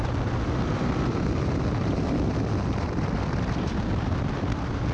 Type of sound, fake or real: fake